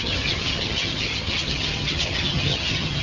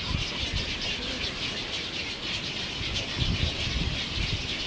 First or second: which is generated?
first